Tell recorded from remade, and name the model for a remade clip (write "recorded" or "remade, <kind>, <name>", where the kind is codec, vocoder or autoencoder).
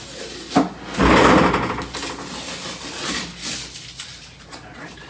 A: recorded